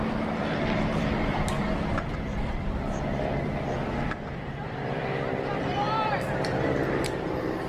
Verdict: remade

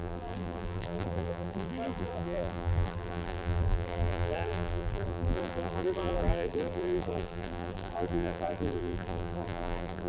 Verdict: remade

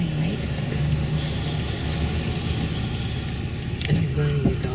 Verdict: recorded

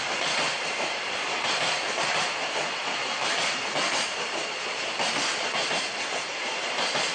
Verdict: remade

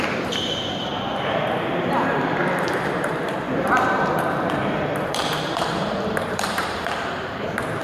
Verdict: remade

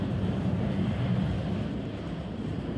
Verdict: recorded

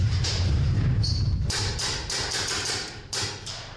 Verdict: remade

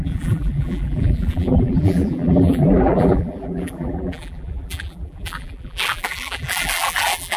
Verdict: remade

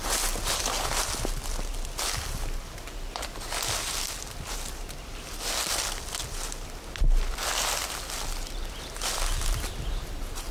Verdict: recorded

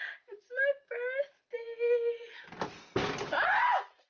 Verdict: recorded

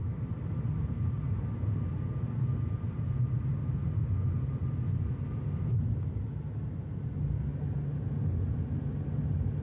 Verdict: recorded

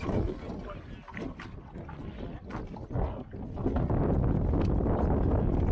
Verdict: recorded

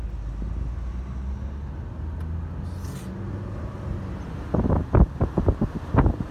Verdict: recorded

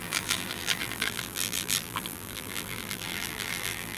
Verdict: remade